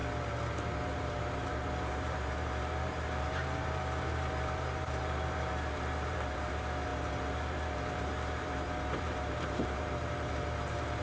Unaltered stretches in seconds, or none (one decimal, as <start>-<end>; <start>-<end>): 0.0-1.0